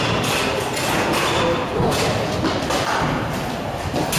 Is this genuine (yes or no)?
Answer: yes